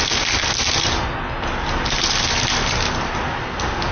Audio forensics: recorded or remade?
recorded